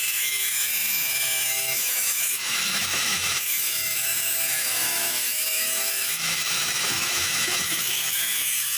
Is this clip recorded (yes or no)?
no